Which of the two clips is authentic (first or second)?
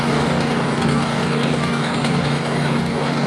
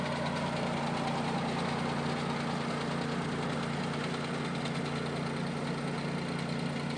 second